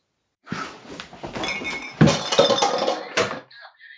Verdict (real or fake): real